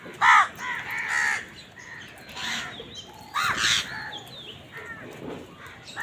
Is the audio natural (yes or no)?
yes